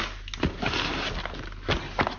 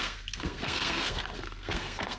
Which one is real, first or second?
first